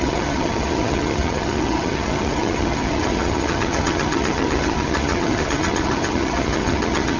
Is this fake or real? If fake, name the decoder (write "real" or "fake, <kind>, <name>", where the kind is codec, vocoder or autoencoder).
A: fake, vocoder, HiFi-GAN